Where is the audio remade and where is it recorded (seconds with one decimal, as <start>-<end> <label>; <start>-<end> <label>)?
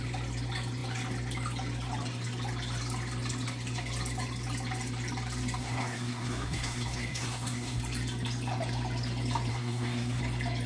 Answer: 0.0-5.6 recorded; 5.6-7.8 remade; 7.8-9.5 recorded; 9.5-10.2 remade; 10.2-10.7 recorded